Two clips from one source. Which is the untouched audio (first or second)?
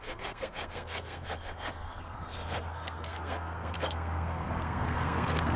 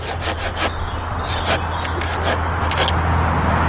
second